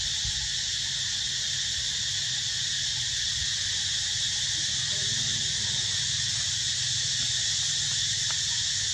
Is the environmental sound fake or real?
real